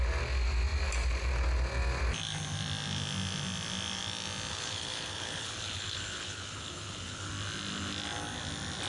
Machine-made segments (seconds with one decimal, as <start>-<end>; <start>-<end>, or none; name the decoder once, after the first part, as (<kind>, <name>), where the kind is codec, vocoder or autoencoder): 4.5-7.3 (codec, HILCodec)